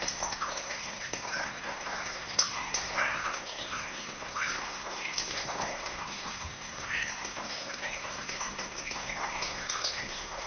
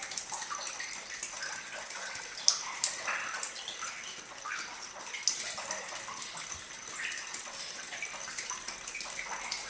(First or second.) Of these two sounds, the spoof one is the first